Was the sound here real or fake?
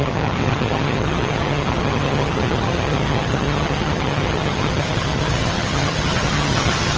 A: fake